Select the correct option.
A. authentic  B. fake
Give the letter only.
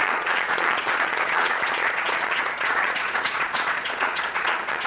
B